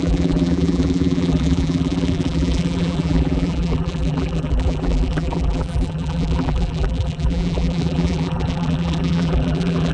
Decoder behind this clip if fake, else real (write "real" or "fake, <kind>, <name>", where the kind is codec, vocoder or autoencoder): fake, vocoder, BigVGAN v2